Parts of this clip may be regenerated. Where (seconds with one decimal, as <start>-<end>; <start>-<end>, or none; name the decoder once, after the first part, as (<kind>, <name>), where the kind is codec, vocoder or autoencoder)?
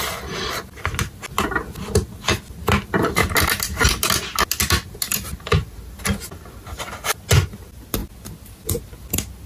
none